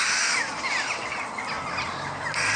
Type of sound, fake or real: real